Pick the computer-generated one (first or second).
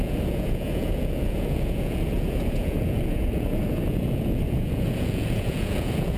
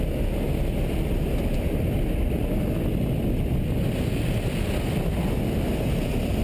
first